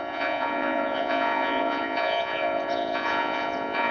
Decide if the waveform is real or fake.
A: fake